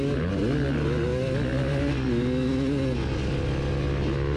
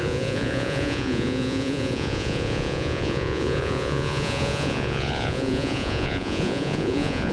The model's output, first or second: second